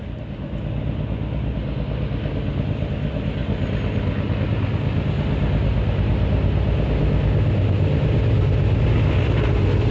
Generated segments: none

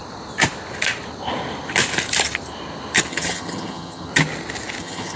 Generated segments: 3.1-4.1 (vocoder, HiFi-GAN); 4.8-5.2